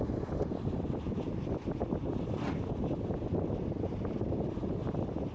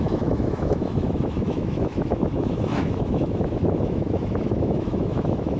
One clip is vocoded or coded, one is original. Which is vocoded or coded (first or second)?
second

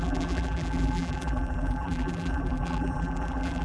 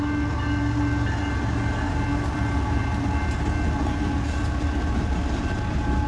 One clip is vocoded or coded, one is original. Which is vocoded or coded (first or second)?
first